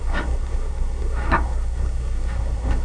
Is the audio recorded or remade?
remade